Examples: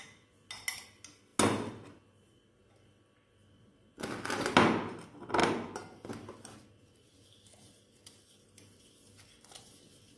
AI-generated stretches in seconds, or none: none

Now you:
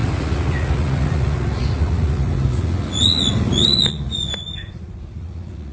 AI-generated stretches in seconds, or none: 0.0-5.7 (vocoder, Vocos)

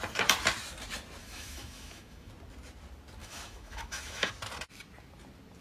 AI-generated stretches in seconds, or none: 1.2-2.3 (autoencoder, DAC-VAE); 3.2-4.3

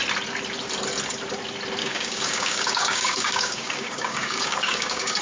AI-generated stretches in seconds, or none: 1.8-5.2 (codec, DAC)

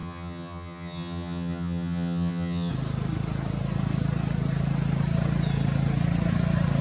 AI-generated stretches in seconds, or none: 0.0-2.7 (vocoder, HiFi-GAN)